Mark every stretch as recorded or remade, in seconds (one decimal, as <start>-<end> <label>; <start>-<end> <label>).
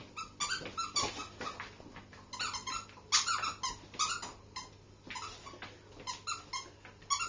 0.0-7.3 recorded